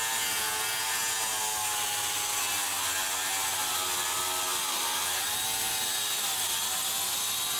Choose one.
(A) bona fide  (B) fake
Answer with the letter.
A